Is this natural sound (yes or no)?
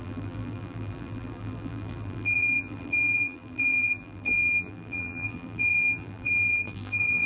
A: no